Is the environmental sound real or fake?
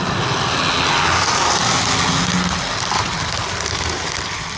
real